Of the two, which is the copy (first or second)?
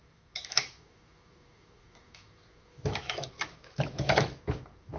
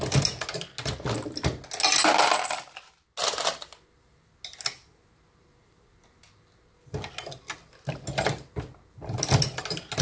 first